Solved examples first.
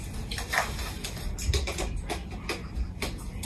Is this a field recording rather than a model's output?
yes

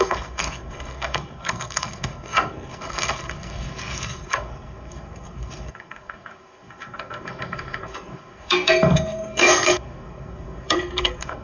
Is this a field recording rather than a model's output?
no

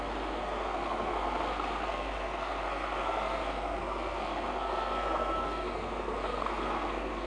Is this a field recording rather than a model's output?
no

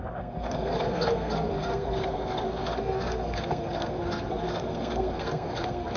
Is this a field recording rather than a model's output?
no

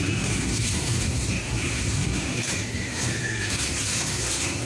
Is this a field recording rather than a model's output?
no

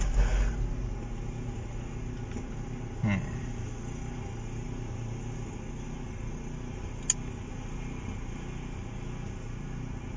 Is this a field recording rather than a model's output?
yes